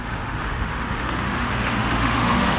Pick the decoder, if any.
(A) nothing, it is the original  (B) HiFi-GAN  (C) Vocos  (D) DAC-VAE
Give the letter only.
D